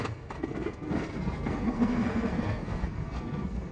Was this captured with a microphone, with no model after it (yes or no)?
no